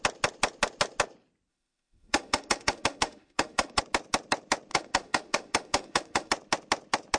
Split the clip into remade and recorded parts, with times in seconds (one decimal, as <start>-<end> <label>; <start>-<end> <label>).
0.0-1.5 recorded; 1.5-3.8 remade; 3.8-4.7 recorded; 4.7-6.3 remade; 6.3-7.2 recorded